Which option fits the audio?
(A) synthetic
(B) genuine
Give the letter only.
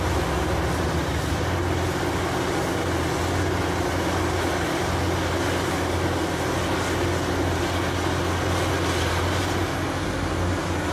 B